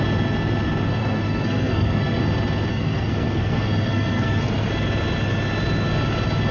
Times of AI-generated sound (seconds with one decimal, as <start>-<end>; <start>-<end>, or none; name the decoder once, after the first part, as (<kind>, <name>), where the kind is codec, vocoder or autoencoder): 1.0-2.2 (codec, SNAC); 2.7-4.7